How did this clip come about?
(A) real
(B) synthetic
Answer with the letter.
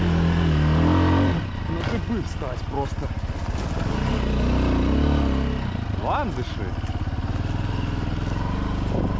A